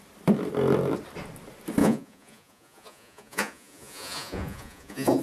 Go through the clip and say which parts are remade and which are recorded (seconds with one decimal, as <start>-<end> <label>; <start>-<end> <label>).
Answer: 0.0-1.8 recorded; 1.8-5.2 remade